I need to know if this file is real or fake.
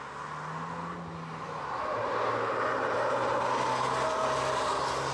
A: real